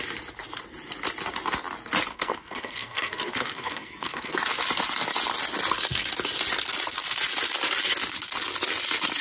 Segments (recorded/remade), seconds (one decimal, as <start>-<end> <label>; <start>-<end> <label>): 0.0-2.1 recorded; 2.1-4.3 remade; 4.3-9.2 recorded